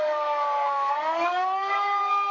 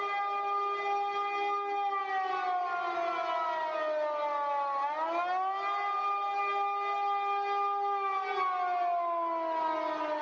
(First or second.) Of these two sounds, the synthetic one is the first